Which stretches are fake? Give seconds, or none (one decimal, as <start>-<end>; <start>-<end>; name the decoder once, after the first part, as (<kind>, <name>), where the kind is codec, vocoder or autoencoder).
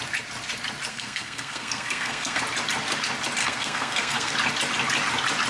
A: 0.9-2.4 (codec, SNAC); 3.4-4.3